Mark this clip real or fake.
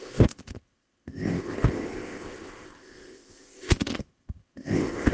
fake